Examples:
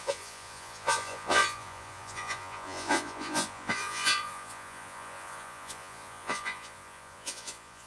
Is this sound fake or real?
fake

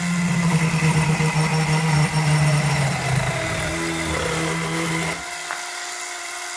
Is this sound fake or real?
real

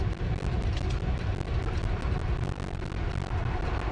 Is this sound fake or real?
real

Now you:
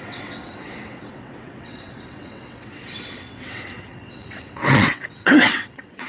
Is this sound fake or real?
fake